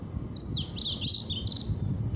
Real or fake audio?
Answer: real